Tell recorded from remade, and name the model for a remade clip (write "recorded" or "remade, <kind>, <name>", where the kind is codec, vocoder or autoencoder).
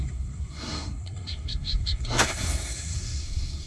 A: remade, codec, SNAC